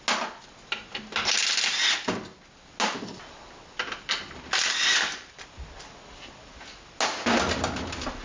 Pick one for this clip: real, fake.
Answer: real